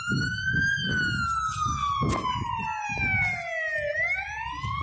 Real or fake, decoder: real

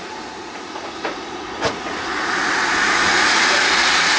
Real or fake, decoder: fake, vocoder, Vocos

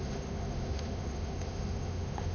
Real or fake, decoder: fake, autoencoder, DAC-VAE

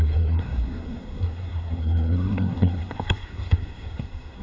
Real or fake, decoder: fake, codec, SNAC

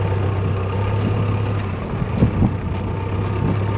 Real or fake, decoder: real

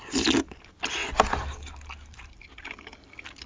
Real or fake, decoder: real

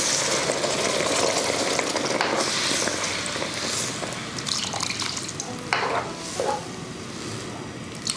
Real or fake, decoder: real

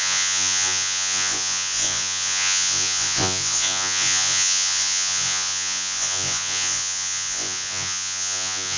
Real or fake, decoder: fake, vocoder, Vocos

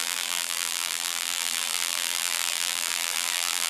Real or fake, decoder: fake, vocoder, BigVGAN v2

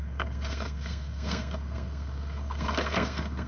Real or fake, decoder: fake, codec, SNAC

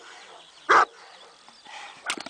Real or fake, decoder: real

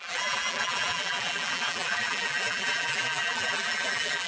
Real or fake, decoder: fake, vocoder, BigVGAN v2